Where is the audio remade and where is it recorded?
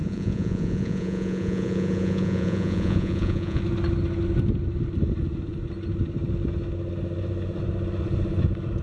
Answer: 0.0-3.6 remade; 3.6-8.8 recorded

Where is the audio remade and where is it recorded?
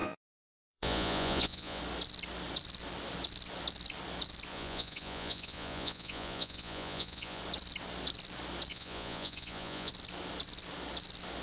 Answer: 0.0-1.8 remade; 1.8-4.5 recorded; 4.5-7.4 remade; 7.4-8.7 recorded; 8.7-9.9 remade; 9.9-11.4 recorded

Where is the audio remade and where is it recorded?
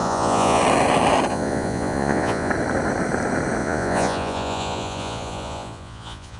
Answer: 0.0-0.6 remade; 0.6-1.3 recorded; 1.3-2.5 remade; 2.5-3.6 recorded; 3.6-6.4 remade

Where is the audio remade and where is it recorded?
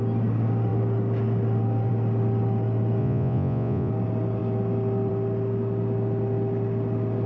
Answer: 0.0-3.0 recorded; 3.0-3.9 remade; 3.9-7.3 recorded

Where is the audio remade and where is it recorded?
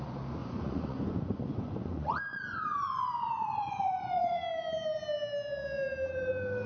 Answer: 0.0-0.4 recorded; 0.4-4.4 remade; 4.4-6.7 recorded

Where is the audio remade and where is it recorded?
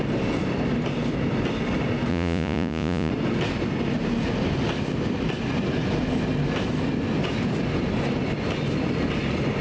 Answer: 0.0-2.1 recorded; 2.1-3.1 remade; 3.1-9.6 recorded